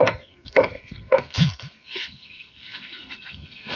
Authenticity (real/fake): fake